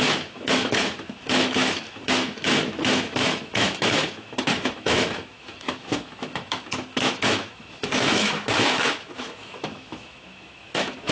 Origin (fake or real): fake